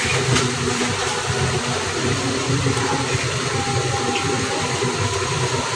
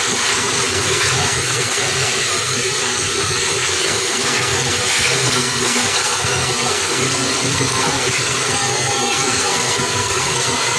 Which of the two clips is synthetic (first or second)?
second